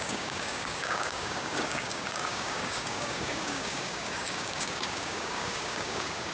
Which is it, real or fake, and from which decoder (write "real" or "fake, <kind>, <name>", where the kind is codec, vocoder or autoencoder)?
fake, codec, DAC